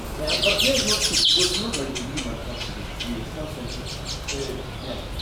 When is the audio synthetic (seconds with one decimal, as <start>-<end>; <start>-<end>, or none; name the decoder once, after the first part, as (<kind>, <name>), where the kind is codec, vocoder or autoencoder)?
none